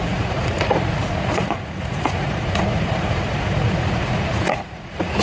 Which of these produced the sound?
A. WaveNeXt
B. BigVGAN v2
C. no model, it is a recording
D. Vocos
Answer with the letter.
D